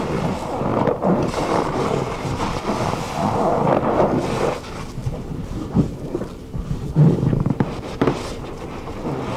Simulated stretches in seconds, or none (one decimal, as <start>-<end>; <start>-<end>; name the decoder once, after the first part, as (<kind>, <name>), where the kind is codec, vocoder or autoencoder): 0.7-2.4 (vocoder, BigVGAN v2); 5.0-8.2